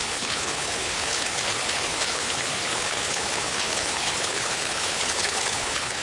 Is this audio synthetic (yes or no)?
yes